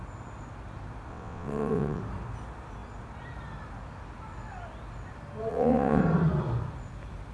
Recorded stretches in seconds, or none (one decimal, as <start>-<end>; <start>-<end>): 0.0-1.1; 2.0-5.5; 6.0-7.3